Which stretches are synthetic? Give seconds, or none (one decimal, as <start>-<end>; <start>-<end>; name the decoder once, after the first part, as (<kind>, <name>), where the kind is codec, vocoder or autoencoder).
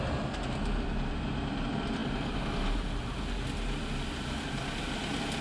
none